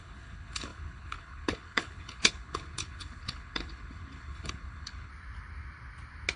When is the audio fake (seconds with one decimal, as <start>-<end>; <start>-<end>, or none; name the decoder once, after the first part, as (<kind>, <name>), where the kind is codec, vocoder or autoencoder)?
0.0-5.1 (codec, HILCodec)